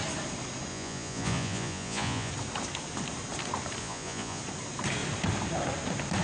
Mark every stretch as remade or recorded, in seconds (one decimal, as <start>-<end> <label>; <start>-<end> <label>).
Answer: 0.0-0.7 recorded; 0.7-2.3 remade; 2.3-3.8 recorded; 3.8-4.4 remade; 4.4-6.2 recorded